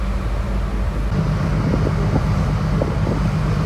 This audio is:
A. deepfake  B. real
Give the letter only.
B